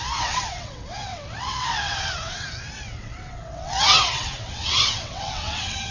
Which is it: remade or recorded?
remade